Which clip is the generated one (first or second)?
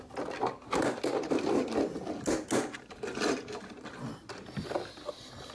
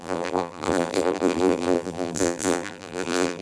second